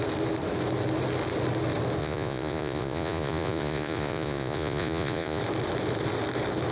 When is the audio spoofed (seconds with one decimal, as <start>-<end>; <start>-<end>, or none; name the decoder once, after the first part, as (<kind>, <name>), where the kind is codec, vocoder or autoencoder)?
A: 2.0-5.4 (vocoder, Vocos)